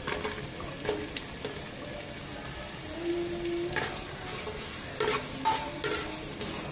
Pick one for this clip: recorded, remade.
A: recorded